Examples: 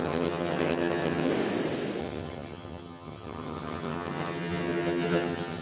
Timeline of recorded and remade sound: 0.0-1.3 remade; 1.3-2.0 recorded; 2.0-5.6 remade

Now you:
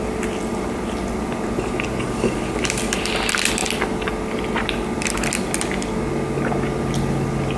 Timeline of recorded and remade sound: 0.0-7.6 recorded

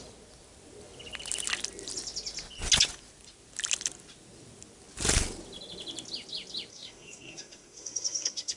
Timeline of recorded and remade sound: 0.0-6.7 recorded; 6.7-8.6 remade

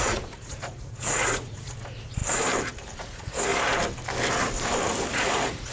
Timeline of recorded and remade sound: 0.0-2.2 remade; 2.2-3.0 recorded; 3.0-3.5 remade; 3.5-5.1 recorded; 5.1-5.7 remade

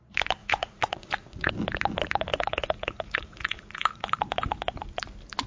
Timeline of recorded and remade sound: 0.0-0.4 recorded; 0.4-1.5 remade; 1.5-2.3 recorded; 2.3-4.1 remade; 4.1-5.5 recorded

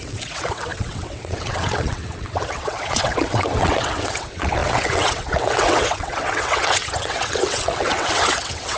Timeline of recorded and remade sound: 0.0-8.8 remade

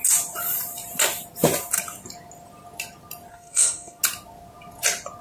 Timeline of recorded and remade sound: 0.0-3.3 recorded; 3.3-4.0 remade; 4.0-5.2 recorded